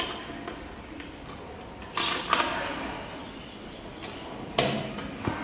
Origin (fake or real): real